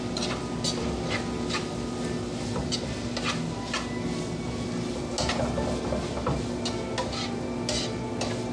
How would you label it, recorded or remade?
recorded